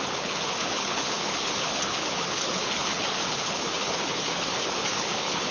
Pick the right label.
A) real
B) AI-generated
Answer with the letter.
B